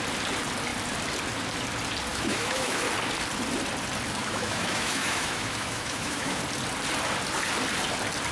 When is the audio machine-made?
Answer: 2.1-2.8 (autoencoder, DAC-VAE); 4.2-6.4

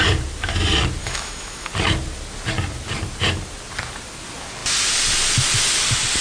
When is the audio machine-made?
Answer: 1.0-1.7 (autoencoder, DAC-VAE)

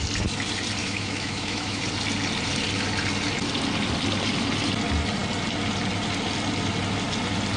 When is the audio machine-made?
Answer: 0.8-1.8 (autoencoder, DAC-VAE)

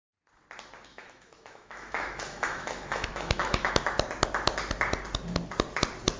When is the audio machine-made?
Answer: 0.9-3.7 (autoencoder, DAC-VAE)

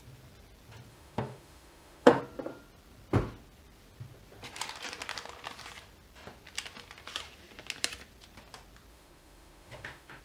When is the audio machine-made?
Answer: 0.9-2.2 (autoencoder, DAC-VAE); 8.9-10.2